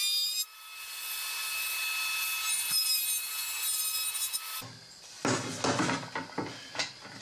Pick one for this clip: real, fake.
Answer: real